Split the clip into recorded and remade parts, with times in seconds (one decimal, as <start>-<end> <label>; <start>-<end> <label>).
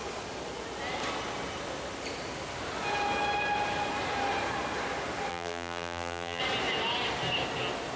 0.0-5.3 recorded; 5.3-6.4 remade; 6.4-8.0 recorded